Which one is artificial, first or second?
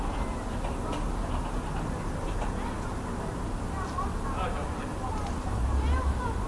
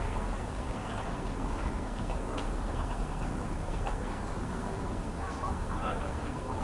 second